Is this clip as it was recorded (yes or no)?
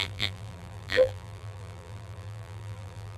no